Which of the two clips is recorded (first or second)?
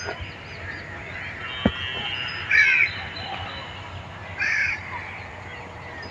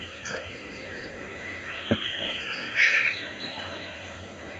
first